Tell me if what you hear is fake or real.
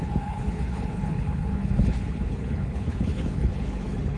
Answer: fake